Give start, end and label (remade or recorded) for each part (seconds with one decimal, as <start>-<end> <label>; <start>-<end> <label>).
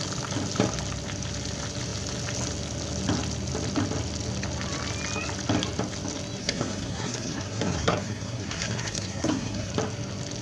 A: 0.0-6.4 recorded; 6.4-9.7 remade; 9.7-10.4 recorded